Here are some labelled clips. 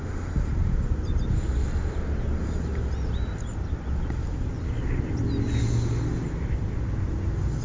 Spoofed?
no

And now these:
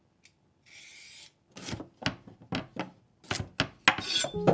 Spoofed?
no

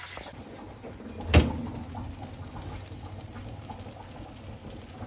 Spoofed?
no